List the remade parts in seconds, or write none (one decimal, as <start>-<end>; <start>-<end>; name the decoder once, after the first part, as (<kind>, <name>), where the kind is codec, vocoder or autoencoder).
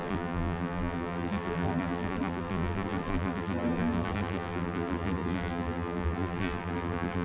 0.0-7.2 (vocoder, BigVGAN v2)